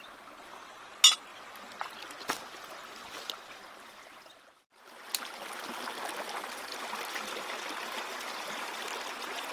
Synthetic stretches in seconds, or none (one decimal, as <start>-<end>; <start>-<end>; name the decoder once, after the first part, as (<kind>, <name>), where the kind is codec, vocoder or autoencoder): none